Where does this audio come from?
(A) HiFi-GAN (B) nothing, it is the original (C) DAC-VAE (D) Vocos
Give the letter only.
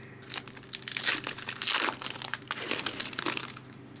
B